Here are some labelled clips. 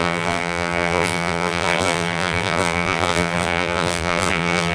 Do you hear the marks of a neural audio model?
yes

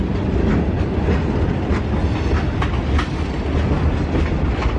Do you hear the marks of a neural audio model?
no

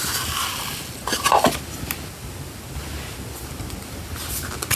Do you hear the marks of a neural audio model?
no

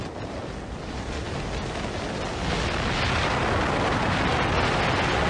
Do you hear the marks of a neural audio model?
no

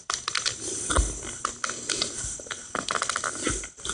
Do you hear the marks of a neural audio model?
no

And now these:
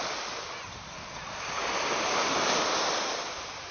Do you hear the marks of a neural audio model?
no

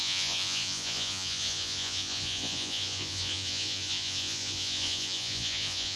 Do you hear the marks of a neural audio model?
yes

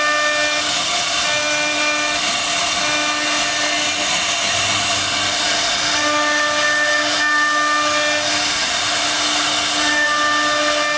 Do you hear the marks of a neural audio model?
no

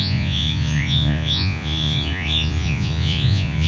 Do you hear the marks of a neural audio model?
yes